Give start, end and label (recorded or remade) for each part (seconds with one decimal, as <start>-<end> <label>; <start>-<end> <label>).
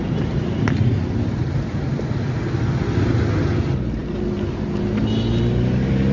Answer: 0.0-6.1 recorded